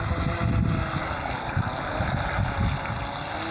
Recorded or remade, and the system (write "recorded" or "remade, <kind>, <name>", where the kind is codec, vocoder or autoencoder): recorded